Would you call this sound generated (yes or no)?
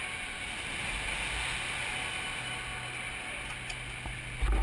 no